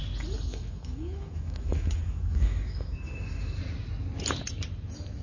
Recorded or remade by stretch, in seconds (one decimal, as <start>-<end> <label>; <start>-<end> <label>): 0.0-0.5 recorded; 0.5-3.6 remade; 3.6-5.2 recorded